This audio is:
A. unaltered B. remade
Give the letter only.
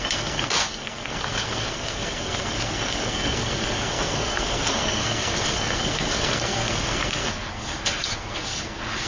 B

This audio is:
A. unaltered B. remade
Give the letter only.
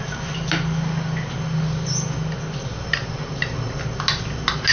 A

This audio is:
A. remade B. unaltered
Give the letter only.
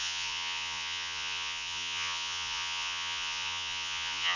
A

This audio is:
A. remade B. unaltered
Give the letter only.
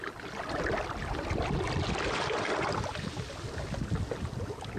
B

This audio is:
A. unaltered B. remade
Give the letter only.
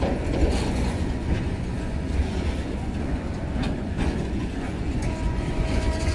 B